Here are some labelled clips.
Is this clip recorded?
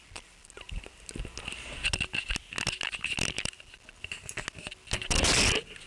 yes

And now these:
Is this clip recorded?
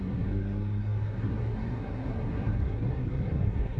no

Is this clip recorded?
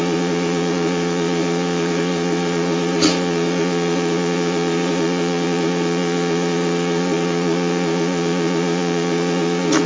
no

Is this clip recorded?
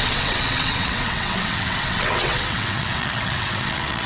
no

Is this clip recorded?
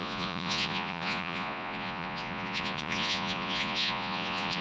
no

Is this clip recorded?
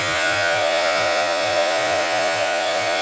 no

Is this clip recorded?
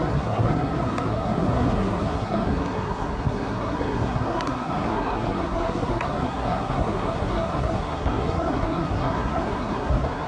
no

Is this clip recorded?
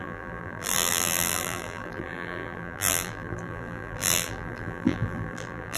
no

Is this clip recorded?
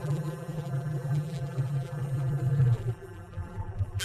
no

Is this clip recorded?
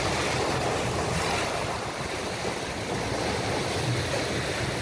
yes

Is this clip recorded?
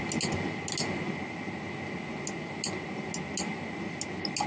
yes